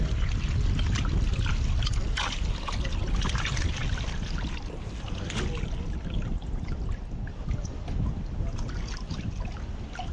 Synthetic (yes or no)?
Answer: no